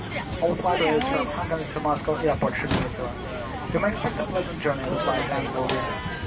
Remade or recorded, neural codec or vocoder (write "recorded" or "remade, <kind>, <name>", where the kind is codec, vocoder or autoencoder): recorded